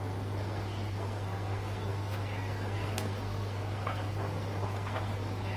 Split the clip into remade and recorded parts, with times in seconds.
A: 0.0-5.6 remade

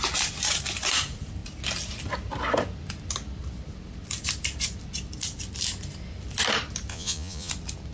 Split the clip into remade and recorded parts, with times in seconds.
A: 0.0-6.9 recorded; 6.9-7.5 remade; 7.5-7.9 recorded

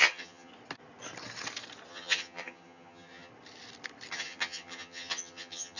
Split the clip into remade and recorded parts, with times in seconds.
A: 0.0-0.5 remade; 0.5-1.9 recorded; 1.9-3.3 remade; 3.3-4.1 recorded; 4.1-5.8 remade